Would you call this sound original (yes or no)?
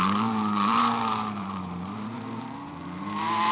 no